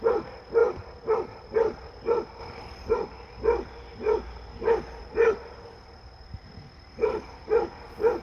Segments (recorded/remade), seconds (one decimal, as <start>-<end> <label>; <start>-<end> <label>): 0.0-0.6 recorded; 0.6-1.5 remade; 1.5-2.4 recorded; 2.4-2.9 remade; 2.9-5.0 recorded; 5.0-7.4 remade; 7.4-8.2 recorded